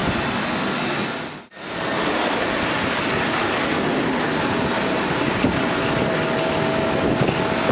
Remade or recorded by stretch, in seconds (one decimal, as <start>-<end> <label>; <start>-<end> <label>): 0.0-4.3 recorded; 4.3-6.1 remade; 6.1-7.7 recorded

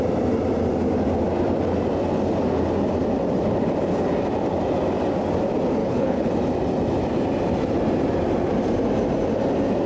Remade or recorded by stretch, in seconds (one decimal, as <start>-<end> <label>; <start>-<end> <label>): 0.0-5.8 recorded; 5.8-6.3 remade; 6.3-9.9 recorded

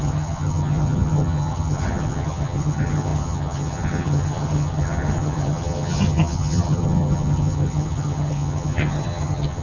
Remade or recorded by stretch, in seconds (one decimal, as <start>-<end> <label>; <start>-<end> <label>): 0.0-9.6 remade

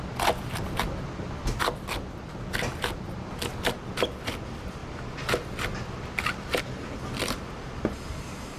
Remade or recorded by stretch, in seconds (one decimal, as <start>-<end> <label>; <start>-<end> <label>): 0.0-8.6 recorded

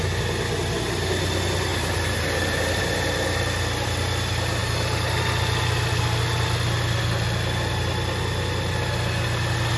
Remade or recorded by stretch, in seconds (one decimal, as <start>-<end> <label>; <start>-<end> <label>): 0.0-1.7 recorded; 1.7-2.8 remade; 2.8-4.6 recorded; 4.6-5.2 remade; 5.2-9.8 recorded

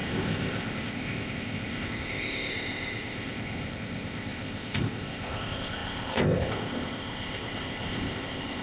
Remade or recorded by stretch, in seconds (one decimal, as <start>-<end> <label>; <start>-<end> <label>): 0.0-8.6 remade

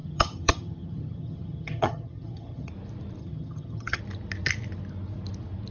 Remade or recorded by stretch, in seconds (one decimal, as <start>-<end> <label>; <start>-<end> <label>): 0.0-2.7 remade; 2.7-3.2 recorded; 3.2-4.0 remade; 4.0-5.7 recorded

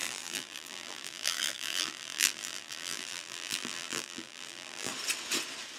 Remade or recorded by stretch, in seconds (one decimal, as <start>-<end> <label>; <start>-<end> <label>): 0.0-4.9 remade; 4.9-5.8 recorded